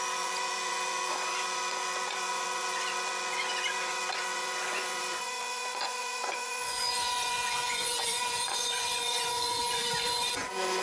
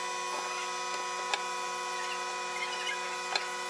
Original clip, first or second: second